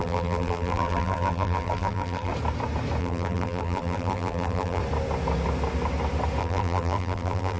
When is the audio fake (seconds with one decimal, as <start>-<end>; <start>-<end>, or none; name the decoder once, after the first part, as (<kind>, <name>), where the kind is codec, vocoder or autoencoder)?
0.0-2.3 (vocoder, BigVGAN v2); 3.0-4.8; 6.4-7.6